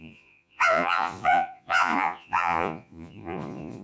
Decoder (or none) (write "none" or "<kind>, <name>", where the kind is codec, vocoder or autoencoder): vocoder, Vocos